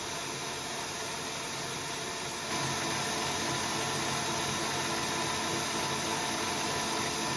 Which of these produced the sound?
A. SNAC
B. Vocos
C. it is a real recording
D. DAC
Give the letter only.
C